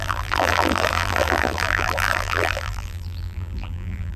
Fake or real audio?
fake